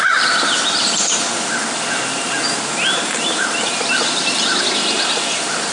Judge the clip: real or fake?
fake